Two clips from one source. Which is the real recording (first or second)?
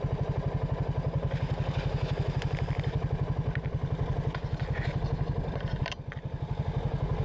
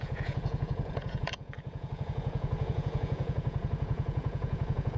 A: first